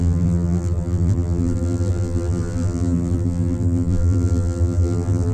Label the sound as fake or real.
fake